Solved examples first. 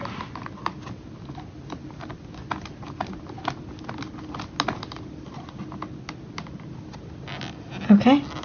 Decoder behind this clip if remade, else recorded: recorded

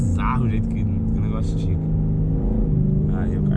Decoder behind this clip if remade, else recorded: recorded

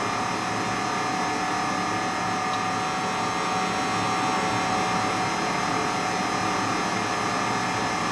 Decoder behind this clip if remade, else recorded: recorded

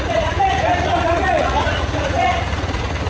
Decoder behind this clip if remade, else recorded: remade, vocoder, Vocos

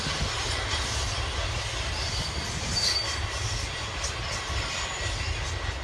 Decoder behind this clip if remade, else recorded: recorded